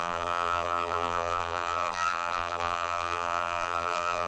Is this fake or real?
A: fake